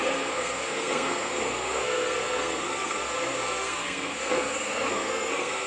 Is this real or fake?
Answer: fake